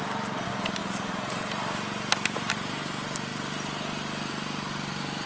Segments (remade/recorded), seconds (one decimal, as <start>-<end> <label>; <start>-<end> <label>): 0.0-5.3 recorded